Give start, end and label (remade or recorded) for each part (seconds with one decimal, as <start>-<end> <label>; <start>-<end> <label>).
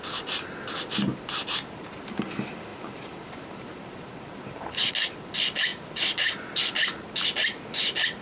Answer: 0.0-2.7 recorded; 2.7-4.9 remade; 4.9-5.7 recorded; 5.7-6.5 remade; 6.5-8.2 recorded